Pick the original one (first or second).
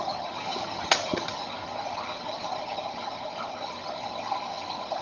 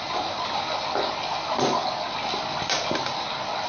second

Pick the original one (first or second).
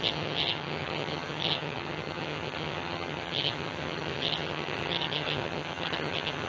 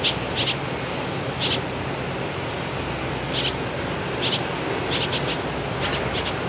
second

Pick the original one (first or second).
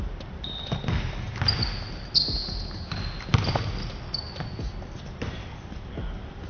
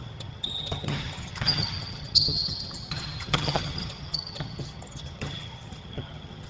first